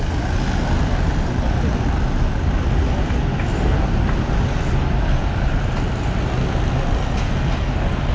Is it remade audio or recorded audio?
recorded